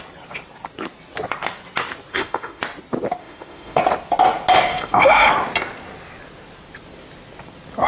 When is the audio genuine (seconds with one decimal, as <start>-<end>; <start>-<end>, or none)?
0.0-2.1; 2.6-3.2; 3.8-4.7; 5.3-7.9